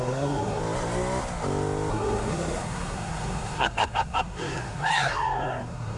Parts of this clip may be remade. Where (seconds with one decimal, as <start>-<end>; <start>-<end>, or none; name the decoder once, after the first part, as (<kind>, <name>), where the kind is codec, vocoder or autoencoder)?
0.0-0.6 (codec, SNAC); 1.9-6.0